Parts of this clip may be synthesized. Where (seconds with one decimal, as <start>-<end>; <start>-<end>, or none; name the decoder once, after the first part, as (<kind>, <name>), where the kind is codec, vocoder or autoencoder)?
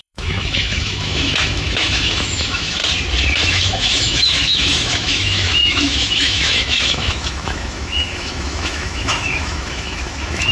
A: 0.0-2.8 (autoencoder, DAC-VAE); 3.5-10.5